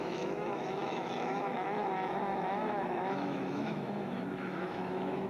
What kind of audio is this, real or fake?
fake